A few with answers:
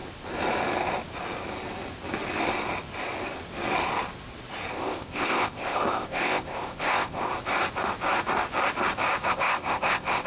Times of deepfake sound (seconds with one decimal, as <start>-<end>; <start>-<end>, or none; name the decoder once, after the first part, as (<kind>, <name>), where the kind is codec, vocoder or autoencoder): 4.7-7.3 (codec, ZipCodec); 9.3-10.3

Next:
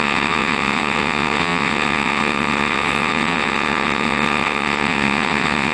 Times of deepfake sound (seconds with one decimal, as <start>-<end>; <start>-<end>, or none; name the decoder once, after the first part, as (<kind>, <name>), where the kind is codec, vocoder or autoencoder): 0.0-5.7 (vocoder, WaveNeXt)

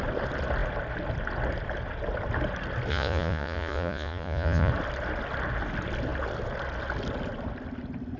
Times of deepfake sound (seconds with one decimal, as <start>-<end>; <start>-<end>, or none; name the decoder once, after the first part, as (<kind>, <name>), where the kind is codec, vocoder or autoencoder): 2.9-4.7 (vocoder, Vocos)

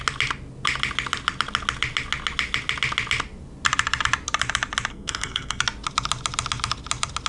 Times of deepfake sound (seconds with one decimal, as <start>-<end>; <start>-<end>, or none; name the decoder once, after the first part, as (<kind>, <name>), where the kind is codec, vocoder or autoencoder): 4.9-5.6 (codec, SNAC)

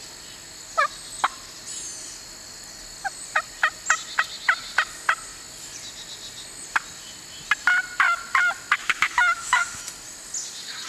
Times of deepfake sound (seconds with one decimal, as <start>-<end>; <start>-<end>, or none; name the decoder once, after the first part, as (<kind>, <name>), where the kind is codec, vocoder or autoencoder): 8.8-9.8 (autoencoder, DAC-VAE)

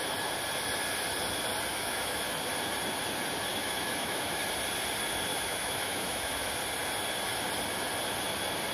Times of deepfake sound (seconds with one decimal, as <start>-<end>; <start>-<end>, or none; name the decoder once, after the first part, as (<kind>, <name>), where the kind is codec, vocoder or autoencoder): 1.7-2.2 (autoencoder, DAC-VAE); 3.5-4.4; 5.3-6.5

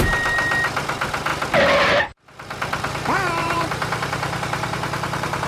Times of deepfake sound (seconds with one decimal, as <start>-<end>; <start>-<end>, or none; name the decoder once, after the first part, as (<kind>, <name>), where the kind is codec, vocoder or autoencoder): 3.4-5.5 (vocoder, BigVGAN v2)

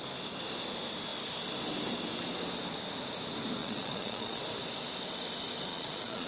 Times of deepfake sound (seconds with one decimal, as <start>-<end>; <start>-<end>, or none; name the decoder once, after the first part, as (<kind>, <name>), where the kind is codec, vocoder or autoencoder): 3.6-4.4 (vocoder, Vocos); 5.7-6.3